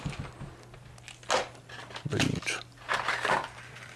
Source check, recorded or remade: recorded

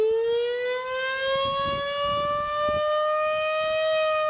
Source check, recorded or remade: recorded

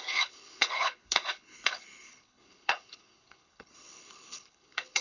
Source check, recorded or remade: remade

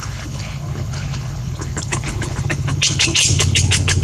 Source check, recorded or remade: remade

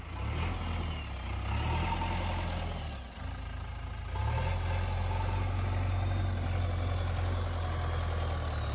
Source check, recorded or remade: recorded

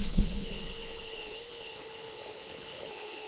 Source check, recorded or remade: remade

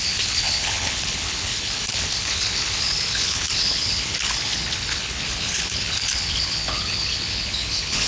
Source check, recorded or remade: remade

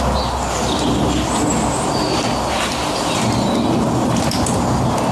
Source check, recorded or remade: recorded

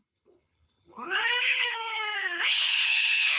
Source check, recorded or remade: remade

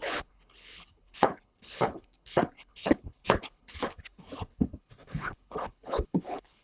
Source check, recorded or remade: remade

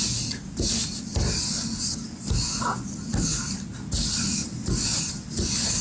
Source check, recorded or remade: recorded